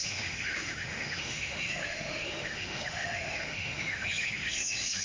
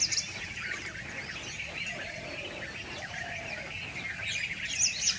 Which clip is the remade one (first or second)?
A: first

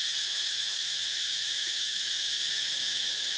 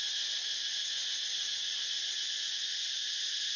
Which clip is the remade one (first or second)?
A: first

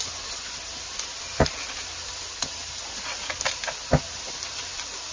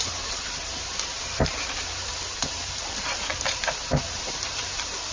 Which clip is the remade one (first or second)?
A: second